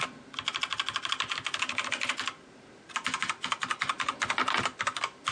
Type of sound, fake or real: real